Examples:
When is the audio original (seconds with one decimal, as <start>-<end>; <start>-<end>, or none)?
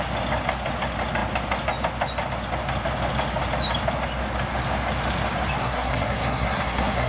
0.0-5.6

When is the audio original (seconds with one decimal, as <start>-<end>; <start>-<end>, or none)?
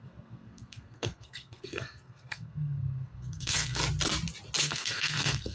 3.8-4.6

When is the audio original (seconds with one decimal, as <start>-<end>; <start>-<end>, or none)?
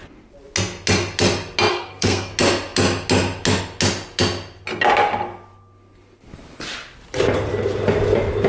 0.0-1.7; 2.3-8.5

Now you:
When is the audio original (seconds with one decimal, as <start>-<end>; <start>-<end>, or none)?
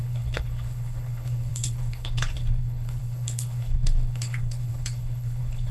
none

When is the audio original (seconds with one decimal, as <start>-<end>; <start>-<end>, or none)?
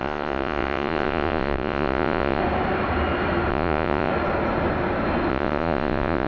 2.4-3.5; 4.1-5.3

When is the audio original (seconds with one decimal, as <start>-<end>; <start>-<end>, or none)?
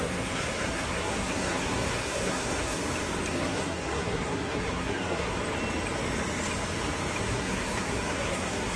2.8-3.3; 5.4-7.2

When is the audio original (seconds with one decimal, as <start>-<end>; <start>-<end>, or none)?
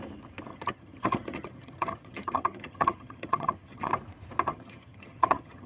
0.0-0.5; 3.9-4.5